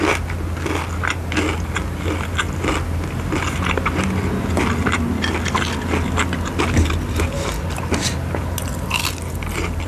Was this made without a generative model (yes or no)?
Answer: yes